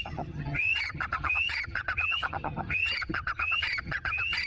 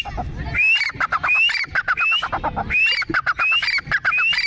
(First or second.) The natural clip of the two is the second